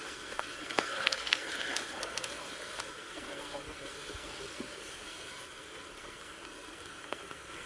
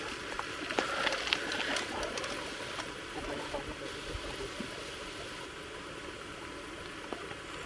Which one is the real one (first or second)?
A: second